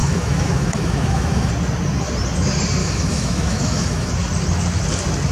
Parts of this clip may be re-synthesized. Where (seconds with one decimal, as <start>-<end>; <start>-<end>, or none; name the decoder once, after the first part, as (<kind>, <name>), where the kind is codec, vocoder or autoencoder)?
0.0-1.5 (autoencoder, DAC-VAE); 2.8-4.1